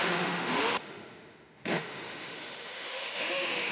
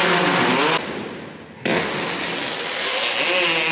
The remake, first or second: first